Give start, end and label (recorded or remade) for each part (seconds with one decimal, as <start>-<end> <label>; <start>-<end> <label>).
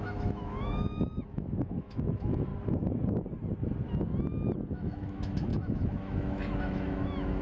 0.0-2.5 remade; 2.5-4.7 recorded; 4.7-7.4 remade